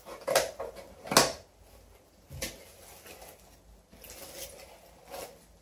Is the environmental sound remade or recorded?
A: recorded